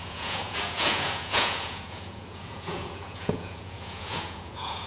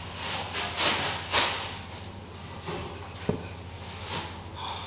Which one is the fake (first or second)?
first